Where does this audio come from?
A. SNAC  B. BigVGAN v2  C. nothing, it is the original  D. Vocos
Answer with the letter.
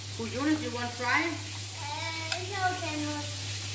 C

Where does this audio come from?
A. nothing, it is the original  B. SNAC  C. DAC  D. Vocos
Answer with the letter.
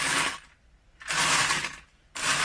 A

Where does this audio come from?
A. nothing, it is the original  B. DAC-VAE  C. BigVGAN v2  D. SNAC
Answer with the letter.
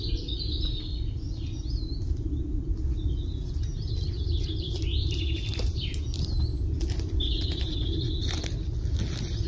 A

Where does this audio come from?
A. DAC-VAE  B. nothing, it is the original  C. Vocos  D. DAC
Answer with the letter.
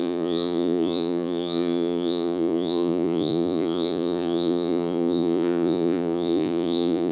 C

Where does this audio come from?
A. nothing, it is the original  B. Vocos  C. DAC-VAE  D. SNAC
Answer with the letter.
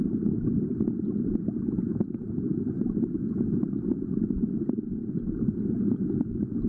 A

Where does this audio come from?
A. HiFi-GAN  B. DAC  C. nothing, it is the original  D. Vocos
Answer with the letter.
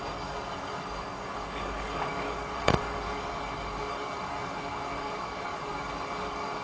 B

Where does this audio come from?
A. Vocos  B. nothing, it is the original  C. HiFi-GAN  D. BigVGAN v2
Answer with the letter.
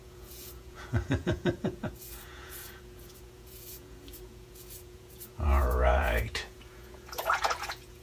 A